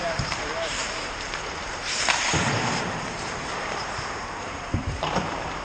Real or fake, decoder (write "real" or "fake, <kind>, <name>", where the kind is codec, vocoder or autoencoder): fake, vocoder, BigVGAN v2